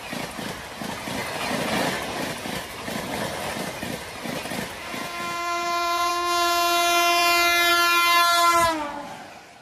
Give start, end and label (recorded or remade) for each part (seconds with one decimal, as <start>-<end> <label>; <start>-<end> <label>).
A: 0.0-1.2 recorded; 1.2-6.1 remade; 6.1-9.6 recorded